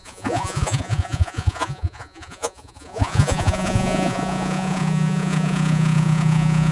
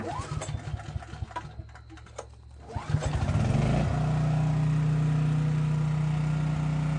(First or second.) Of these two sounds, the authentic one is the second